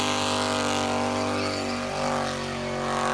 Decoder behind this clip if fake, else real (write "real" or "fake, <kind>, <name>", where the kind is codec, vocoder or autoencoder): real